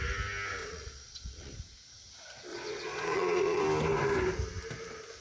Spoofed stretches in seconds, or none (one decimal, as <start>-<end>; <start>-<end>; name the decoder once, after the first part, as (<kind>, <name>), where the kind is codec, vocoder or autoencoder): 0.6-1.5 (vocoder, Vocos); 2.5-3.6